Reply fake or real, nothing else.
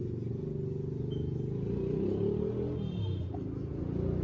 real